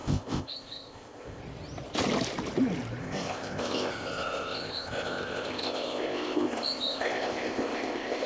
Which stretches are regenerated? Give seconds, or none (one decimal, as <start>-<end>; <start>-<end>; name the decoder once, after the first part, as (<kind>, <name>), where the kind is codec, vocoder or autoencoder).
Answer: 0.0-1.4 (codec, ZipCodec); 3.0-8.3